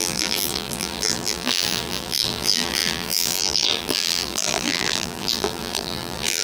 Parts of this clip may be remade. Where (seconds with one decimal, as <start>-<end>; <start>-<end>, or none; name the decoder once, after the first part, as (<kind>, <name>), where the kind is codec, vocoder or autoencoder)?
0.0-6.4 (vocoder, BigVGAN v2)